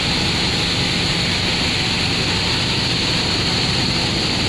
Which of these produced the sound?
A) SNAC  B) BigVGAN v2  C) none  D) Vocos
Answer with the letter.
C